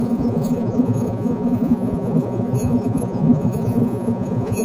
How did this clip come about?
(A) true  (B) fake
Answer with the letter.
B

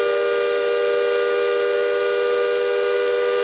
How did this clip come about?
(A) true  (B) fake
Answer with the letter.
A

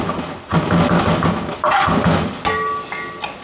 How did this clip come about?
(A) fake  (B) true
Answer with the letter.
B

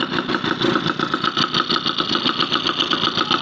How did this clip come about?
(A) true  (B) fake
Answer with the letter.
A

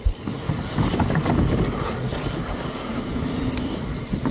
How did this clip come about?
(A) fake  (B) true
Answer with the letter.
B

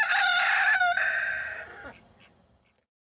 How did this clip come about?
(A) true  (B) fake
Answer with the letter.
A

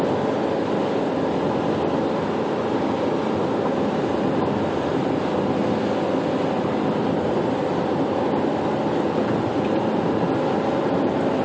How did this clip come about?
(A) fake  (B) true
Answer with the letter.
B